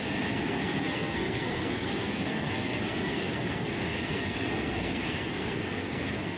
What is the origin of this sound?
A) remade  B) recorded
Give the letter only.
A